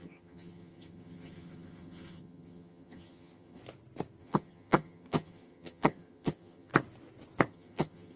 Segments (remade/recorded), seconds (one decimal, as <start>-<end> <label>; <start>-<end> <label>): 0.0-3.6 remade; 3.6-4.2 recorded; 4.2-6.7 remade; 6.7-7.5 recorded; 7.5-8.2 remade